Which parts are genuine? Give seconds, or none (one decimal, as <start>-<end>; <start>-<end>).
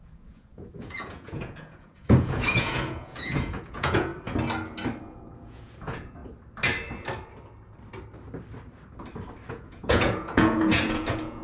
4.1-5.0; 6.2-9.5